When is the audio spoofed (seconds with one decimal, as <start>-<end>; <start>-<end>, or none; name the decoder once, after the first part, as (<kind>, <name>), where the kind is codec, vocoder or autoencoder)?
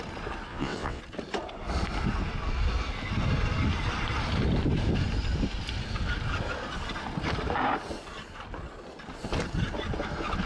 0.5-1.0 (vocoder, WaveNeXt)